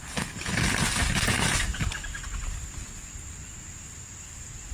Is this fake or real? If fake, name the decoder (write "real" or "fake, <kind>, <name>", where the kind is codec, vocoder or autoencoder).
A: real